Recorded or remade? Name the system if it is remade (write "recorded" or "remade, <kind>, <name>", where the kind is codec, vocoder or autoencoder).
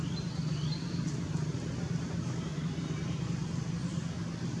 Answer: recorded